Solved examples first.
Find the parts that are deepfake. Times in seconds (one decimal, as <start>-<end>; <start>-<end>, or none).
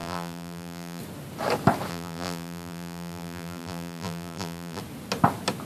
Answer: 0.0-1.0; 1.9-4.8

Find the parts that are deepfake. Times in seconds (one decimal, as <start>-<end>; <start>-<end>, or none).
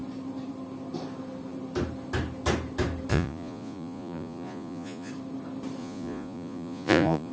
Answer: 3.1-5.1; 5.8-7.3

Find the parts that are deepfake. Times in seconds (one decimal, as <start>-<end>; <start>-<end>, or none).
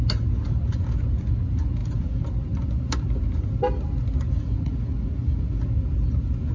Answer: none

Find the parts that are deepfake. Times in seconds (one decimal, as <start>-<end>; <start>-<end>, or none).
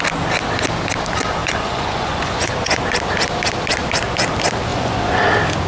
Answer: 1.4-2.8; 4.7-5.2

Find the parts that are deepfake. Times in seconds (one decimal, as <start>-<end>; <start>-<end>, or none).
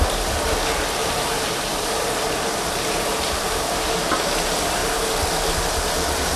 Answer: 1.0-4.0; 4.8-6.4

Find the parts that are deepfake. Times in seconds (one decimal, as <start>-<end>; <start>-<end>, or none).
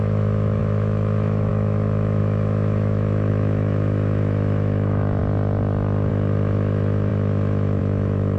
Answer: 0.0-5.2; 6.1-8.4